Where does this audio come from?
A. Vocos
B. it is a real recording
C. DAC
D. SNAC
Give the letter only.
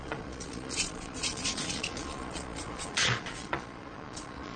A